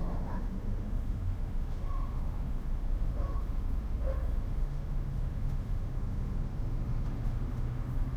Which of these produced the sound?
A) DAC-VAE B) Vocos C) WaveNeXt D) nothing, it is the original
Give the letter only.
A